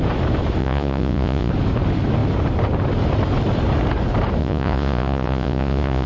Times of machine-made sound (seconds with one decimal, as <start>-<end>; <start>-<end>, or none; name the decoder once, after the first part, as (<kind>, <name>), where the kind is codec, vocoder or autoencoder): 0.6-1.5 (vocoder, Vocos); 4.4-6.1